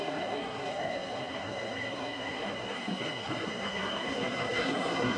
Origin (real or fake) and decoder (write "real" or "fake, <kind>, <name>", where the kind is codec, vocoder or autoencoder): fake, codec, SNAC